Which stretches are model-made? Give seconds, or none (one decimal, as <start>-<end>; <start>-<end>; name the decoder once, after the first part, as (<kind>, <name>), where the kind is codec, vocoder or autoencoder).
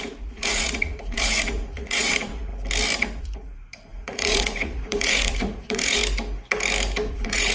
0.0-2.5 (vocoder, Vocos); 3.2-6.0; 7.1-7.5